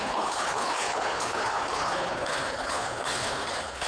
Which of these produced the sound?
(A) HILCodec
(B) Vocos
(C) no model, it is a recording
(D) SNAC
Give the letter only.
A